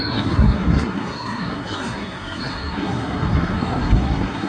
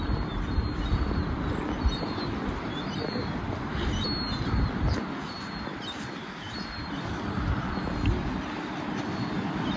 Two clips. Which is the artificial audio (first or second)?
first